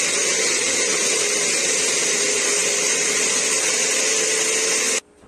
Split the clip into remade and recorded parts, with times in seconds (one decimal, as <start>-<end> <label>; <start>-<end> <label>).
0.0-5.3 recorded